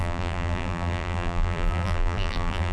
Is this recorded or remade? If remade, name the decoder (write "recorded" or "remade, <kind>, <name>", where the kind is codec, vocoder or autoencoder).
remade, vocoder, BigVGAN v2